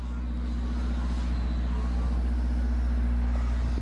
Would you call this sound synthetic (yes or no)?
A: no